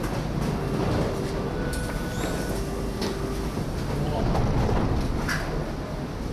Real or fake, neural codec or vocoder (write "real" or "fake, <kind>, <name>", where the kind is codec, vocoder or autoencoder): real